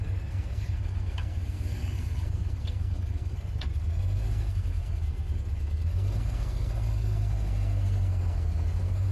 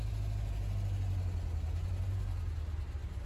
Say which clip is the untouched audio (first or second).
second